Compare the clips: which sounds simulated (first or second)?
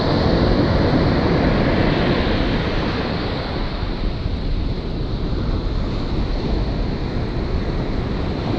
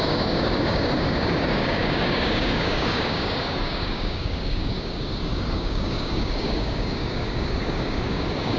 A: second